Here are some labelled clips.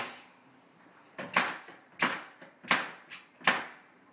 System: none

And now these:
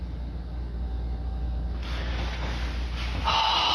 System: none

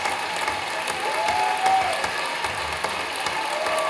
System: none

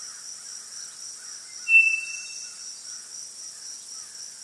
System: none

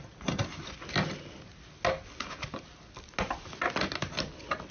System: none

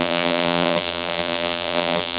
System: vocoder, BigVGAN v2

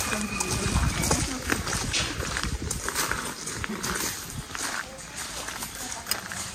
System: vocoder, BigVGAN v2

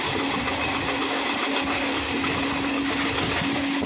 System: none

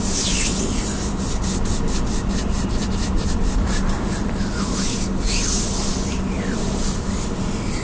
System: none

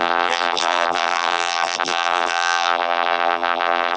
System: vocoder, BigVGAN v2